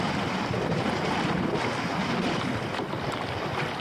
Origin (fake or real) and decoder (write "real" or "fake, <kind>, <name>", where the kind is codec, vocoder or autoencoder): real